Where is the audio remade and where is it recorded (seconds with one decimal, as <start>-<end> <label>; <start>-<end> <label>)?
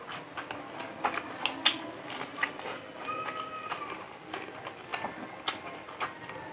0.0-6.5 recorded